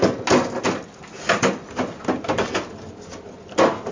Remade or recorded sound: recorded